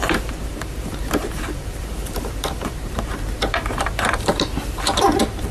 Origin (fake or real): fake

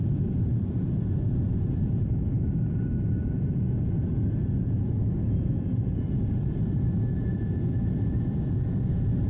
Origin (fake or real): fake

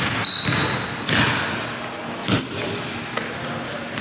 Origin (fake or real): real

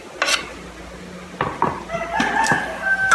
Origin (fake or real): real